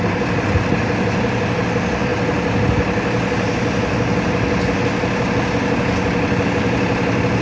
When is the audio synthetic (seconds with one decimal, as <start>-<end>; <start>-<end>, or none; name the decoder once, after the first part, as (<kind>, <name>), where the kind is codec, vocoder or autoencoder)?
none